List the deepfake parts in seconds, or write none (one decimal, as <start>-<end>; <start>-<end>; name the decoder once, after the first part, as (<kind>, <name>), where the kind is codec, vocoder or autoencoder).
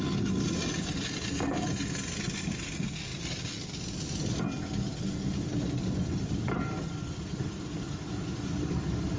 none